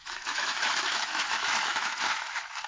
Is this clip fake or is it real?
fake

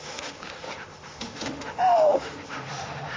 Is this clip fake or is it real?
fake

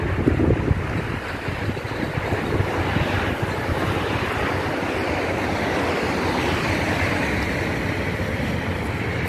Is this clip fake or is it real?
real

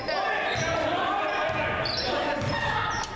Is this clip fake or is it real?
real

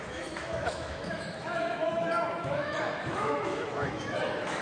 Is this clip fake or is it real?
fake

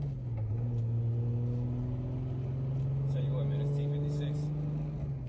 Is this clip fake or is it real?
real